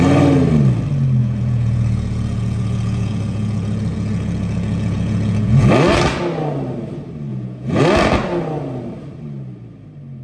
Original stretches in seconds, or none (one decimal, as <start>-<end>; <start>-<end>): 0.0-1.2; 5.7-7.3; 7.8-10.2